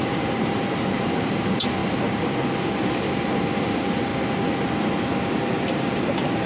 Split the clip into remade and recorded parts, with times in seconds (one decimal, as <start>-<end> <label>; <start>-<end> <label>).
0.0-1.8 remade; 1.8-3.5 recorded; 3.5-4.1 remade; 4.1-5.7 recorded; 5.7-6.5 remade